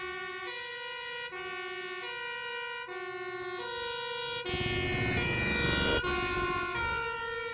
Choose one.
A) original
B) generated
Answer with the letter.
A